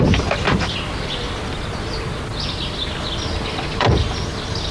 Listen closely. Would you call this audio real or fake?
real